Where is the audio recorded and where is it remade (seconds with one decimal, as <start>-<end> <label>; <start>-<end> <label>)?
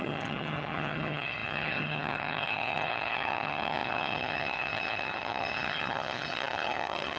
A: 0.0-7.2 remade